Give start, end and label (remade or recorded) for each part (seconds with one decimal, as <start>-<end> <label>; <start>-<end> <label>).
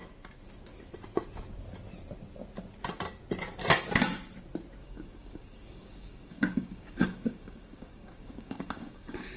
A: 0.0-4.8 recorded; 4.8-9.4 remade